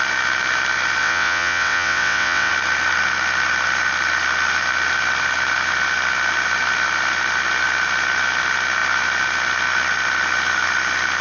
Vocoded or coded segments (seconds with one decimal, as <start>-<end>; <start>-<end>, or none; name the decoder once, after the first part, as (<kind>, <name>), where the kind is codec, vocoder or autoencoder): 1.0-2.5 (vocoder, WaveNeXt)